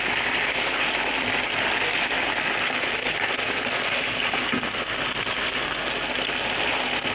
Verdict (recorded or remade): recorded